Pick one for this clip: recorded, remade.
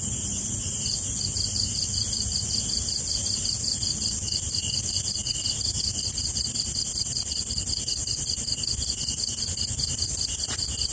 recorded